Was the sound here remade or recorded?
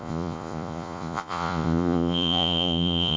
remade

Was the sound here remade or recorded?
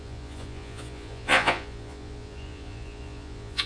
remade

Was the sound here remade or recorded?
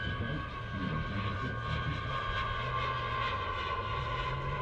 recorded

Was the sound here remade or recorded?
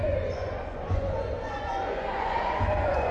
remade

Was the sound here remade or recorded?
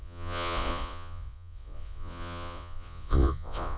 remade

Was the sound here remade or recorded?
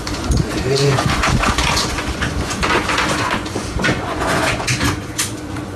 remade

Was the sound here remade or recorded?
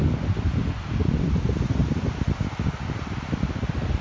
recorded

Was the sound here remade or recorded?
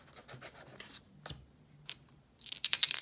recorded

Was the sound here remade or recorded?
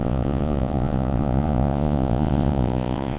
remade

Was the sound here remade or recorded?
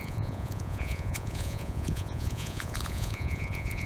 remade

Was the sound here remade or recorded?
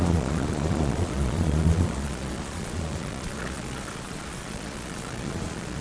remade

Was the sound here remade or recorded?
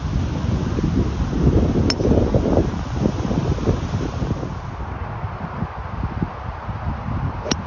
recorded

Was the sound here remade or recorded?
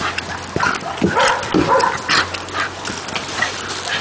recorded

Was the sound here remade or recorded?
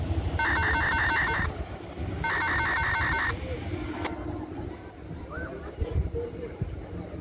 recorded